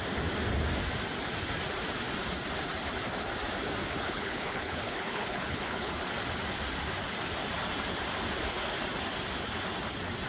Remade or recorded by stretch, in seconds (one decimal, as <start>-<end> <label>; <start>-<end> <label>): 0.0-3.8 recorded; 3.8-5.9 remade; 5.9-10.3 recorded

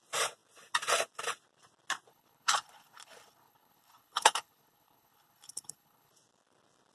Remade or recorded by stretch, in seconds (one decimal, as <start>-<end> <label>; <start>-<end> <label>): 0.0-2.1 recorded; 2.1-6.1 remade; 6.1-6.9 recorded

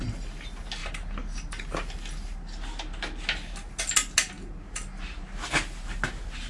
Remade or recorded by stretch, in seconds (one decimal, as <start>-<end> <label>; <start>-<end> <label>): 0.0-6.5 recorded

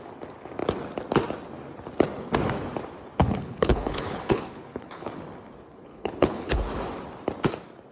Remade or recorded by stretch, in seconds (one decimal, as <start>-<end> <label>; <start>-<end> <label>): 0.0-3.2 recorded; 3.2-5.1 remade; 5.1-5.9 recorded; 5.9-6.6 remade; 6.6-7.9 recorded

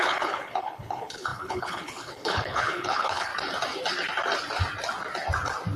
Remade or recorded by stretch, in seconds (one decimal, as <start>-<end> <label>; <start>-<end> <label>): 0.0-3.3 remade; 3.3-5.8 recorded

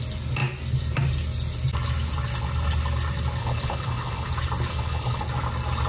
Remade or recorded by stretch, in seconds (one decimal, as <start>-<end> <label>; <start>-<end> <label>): 0.0-3.4 recorded; 3.4-4.3 remade; 4.3-4.7 recorded; 4.7-5.2 remade; 5.2-5.9 recorded

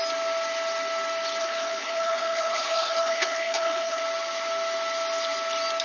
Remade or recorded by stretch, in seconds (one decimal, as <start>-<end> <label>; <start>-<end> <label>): 0.0-1.4 recorded; 1.4-4.0 remade; 4.0-5.8 recorded